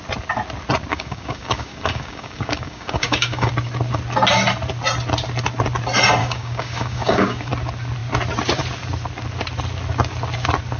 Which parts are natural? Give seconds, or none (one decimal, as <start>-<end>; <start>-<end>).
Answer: 0.0-0.9; 3.5-6.2; 7.5-10.8